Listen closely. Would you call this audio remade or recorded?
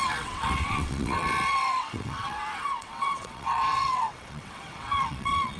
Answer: remade